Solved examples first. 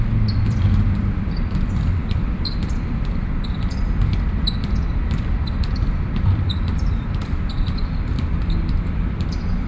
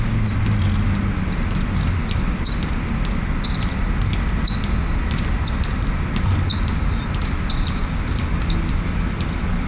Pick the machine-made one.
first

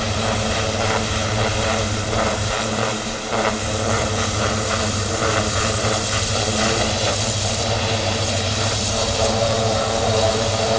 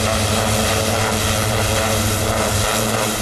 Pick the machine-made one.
first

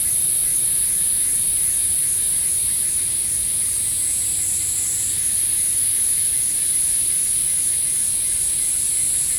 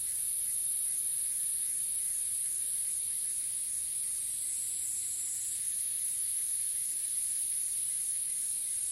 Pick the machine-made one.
second